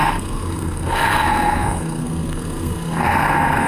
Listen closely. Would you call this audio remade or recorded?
remade